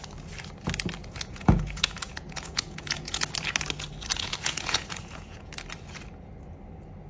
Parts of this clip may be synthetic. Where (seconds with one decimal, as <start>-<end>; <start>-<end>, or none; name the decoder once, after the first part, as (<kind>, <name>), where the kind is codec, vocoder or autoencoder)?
1.0-3.3 (vocoder, Vocos); 4.1-5.5